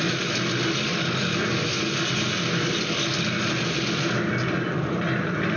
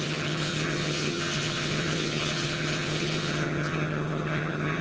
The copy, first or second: second